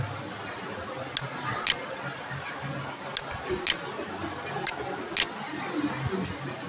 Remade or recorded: recorded